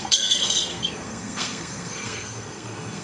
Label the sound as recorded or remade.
remade